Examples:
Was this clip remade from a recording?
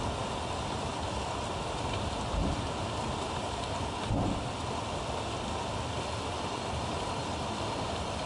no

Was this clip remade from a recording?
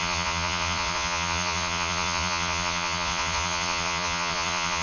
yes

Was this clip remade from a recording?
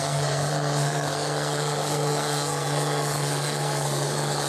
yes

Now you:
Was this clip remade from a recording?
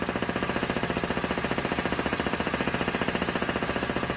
no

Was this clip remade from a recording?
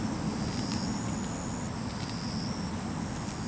no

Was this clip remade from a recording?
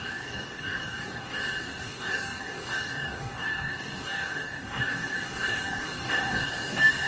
yes